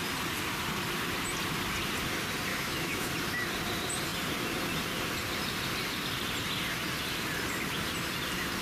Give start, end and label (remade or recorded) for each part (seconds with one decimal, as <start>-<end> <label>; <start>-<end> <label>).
0.0-2.5 recorded; 2.5-3.1 remade; 3.1-8.6 recorded